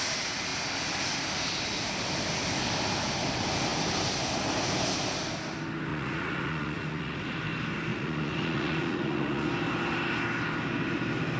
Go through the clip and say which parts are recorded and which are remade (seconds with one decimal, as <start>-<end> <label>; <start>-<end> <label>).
0.0-5.9 recorded; 5.9-7.4 remade; 7.4-7.9 recorded; 7.9-9.5 remade; 9.5-11.4 recorded